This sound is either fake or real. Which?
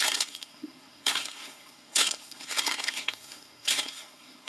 fake